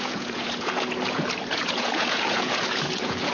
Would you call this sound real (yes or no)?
no